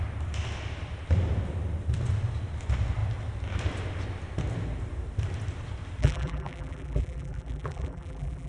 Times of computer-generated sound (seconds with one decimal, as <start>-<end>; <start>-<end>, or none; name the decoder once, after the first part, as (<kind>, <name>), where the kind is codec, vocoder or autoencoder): 6.0-8.5 (vocoder, BigVGAN v2)